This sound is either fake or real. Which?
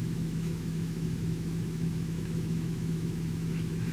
fake